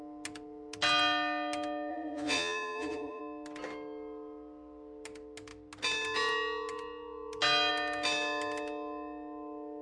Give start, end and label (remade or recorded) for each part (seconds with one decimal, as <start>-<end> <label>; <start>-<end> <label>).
0.0-1.9 recorded; 1.9-3.2 remade; 3.2-9.8 recorded